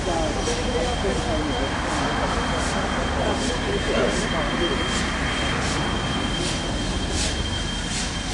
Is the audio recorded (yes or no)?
yes